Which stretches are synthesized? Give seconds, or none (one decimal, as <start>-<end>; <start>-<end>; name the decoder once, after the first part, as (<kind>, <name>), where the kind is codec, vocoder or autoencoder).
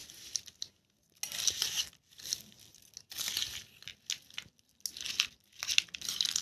none